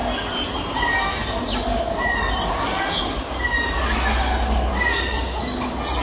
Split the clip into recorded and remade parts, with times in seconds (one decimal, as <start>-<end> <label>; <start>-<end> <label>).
0.0-6.0 recorded